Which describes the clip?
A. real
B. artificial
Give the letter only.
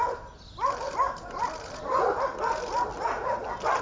A